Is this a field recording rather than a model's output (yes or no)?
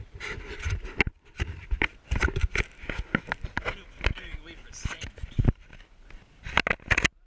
yes